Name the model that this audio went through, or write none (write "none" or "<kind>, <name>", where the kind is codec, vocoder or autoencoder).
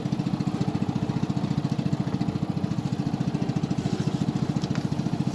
none